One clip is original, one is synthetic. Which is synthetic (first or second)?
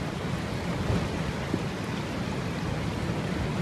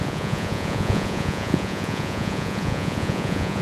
second